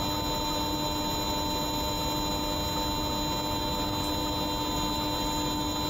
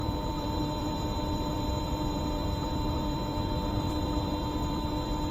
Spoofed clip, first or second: second